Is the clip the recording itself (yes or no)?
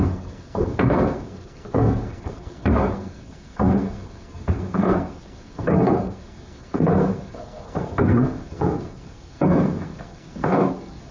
no